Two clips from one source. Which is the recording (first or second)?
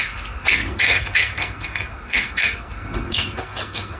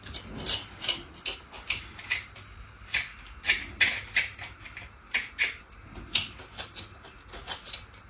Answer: second